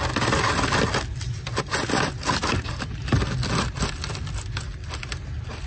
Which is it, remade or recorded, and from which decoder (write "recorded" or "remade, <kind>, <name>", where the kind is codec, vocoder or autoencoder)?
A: recorded